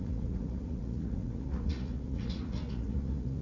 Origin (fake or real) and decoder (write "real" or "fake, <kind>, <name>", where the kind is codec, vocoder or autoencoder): fake, vocoder, Vocos